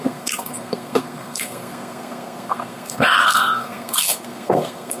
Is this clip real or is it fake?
fake